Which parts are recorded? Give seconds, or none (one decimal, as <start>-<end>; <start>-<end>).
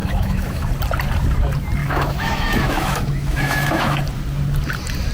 0.7-1.8; 4.0-5.1